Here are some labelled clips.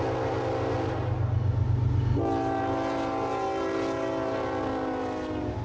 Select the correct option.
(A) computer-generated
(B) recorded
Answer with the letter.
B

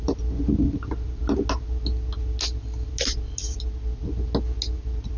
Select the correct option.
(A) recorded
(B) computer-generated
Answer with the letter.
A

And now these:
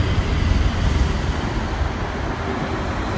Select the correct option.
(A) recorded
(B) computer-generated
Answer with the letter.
A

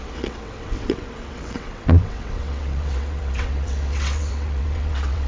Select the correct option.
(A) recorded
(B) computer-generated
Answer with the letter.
B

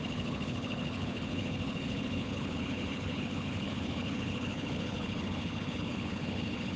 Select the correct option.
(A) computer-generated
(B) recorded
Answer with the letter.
A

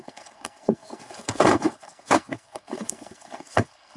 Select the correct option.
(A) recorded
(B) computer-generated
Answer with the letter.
B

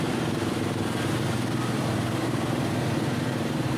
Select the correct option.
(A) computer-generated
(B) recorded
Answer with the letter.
B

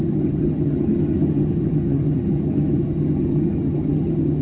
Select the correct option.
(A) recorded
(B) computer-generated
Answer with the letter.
B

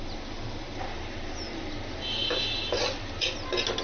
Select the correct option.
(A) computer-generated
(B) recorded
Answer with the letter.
B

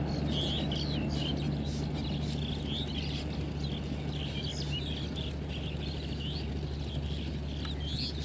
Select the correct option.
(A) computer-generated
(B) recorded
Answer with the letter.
B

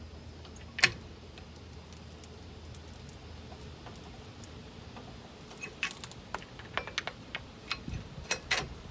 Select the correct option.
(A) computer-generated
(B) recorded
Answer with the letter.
B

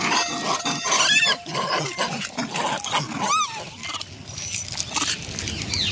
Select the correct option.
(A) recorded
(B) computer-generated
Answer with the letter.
A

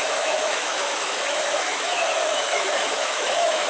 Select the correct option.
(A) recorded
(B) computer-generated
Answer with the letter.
B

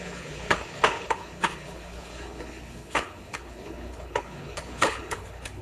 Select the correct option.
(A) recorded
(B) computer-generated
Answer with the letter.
B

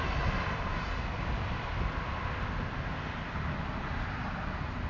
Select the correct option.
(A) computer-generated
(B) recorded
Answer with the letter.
B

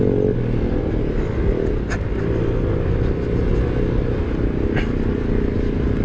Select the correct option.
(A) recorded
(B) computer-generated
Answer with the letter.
A